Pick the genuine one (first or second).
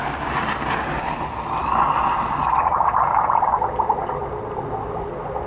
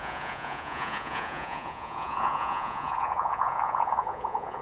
first